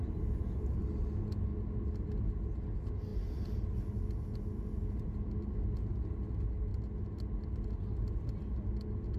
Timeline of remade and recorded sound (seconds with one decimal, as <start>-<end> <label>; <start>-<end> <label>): 0.0-9.2 recorded